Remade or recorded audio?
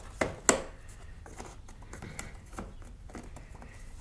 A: recorded